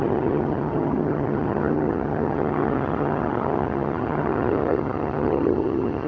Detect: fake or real fake